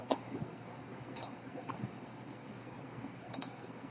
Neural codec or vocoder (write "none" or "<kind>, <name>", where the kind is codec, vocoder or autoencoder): codec, SNAC